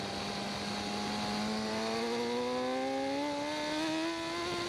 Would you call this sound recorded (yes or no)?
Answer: yes